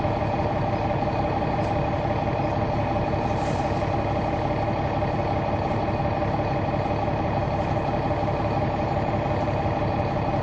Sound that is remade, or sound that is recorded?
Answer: remade